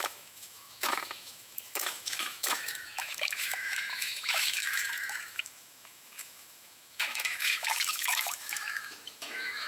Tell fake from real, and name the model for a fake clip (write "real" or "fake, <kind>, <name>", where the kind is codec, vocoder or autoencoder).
fake, autoencoder, DAC-VAE